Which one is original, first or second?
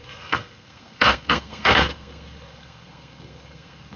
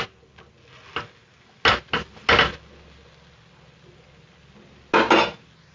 second